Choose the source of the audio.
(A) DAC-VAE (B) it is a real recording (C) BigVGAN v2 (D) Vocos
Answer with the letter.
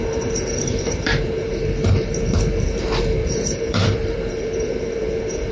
C